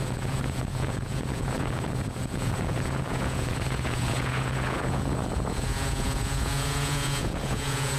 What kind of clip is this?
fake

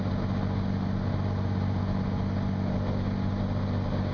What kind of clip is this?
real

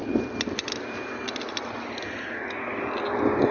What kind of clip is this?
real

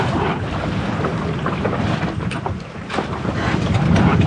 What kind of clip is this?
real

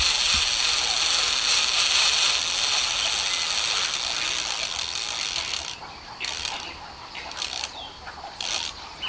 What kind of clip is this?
real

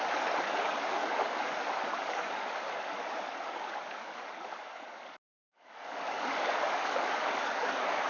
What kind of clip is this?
fake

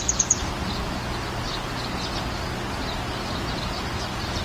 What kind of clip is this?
real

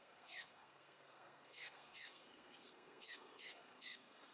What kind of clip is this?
fake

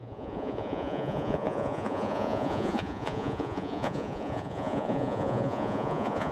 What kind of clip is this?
fake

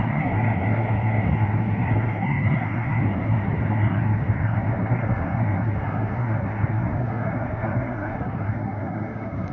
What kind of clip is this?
fake